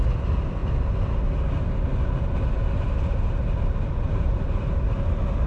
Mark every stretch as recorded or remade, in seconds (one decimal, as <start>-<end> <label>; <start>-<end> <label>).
0.0-0.6 remade; 0.6-3.9 recorded; 3.9-5.5 remade